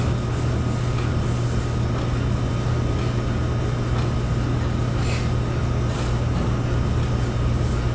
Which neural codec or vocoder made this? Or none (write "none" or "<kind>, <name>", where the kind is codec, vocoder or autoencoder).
none